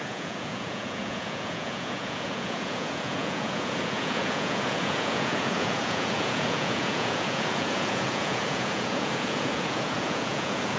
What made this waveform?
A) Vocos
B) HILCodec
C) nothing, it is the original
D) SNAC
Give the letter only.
A